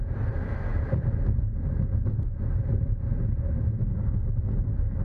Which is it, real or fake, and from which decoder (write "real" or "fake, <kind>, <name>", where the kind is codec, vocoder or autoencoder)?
real